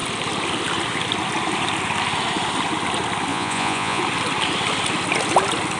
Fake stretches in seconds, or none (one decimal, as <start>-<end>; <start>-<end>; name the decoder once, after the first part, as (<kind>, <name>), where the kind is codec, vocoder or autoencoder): 3.3-4.0 (vocoder, Vocos)